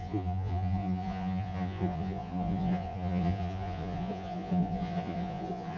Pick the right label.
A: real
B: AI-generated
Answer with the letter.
B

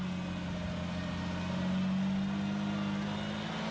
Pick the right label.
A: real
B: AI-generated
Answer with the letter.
A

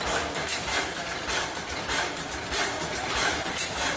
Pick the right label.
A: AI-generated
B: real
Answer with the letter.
B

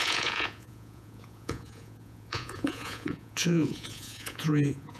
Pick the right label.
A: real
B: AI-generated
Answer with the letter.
B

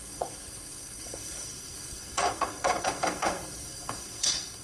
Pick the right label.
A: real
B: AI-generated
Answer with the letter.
B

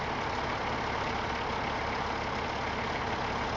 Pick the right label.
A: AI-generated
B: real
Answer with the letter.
B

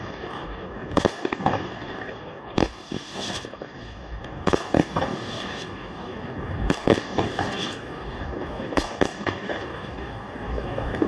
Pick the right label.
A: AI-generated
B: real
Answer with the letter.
A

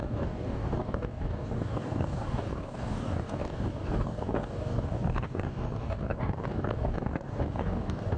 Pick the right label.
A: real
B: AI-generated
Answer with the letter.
B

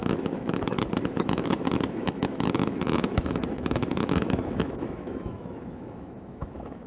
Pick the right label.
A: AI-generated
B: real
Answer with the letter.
A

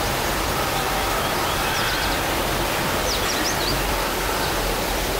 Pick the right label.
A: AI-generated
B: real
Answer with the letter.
A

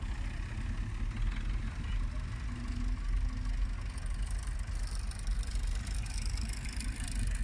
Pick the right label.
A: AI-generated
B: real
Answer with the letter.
B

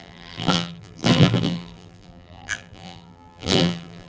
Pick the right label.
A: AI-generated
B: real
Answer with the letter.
A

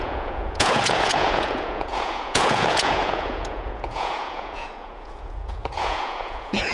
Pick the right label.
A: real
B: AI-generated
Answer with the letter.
B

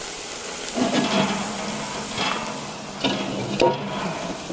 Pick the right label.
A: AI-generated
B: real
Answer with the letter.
B